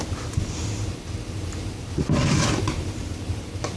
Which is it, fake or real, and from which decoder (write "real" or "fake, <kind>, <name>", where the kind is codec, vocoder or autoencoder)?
real